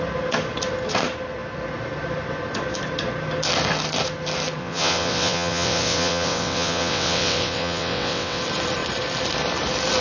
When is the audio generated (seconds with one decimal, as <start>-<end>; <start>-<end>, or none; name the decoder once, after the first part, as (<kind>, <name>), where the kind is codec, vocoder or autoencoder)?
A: 4.6-8.4 (vocoder, WaveNeXt)